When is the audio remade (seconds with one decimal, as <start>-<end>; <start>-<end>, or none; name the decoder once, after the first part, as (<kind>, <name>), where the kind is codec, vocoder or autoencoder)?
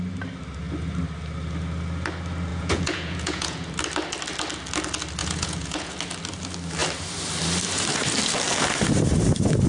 2.5-3.7 (vocoder, Vocos); 5.2-6.0